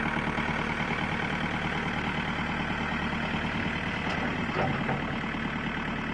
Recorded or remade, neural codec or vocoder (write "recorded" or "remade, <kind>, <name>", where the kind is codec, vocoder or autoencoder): recorded